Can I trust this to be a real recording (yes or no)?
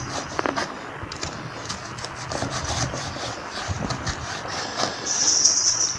no